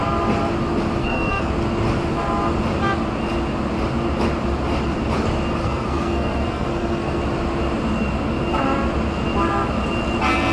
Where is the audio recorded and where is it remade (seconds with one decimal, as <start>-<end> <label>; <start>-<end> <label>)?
0.0-1.0 recorded; 1.0-1.5 remade; 1.5-5.6 recorded; 5.6-7.2 remade; 7.2-10.5 recorded